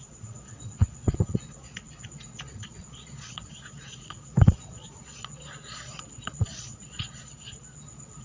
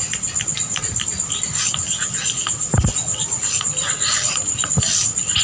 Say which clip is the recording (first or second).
second